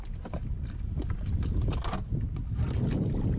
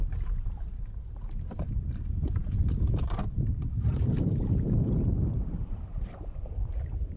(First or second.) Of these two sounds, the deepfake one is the second